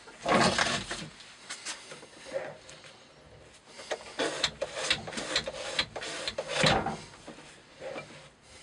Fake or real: real